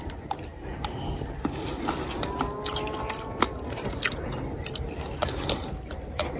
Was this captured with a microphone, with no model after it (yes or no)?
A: yes